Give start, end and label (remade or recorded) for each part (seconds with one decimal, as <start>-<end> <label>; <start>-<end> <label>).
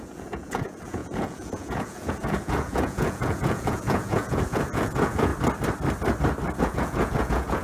0.0-5.3 remade; 5.3-6.6 recorded; 6.6-7.6 remade